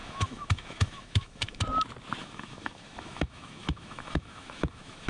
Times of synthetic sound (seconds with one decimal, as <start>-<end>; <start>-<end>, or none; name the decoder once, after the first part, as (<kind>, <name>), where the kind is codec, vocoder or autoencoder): 0.0-1.6 (autoencoder, DAC-VAE); 2.2-5.1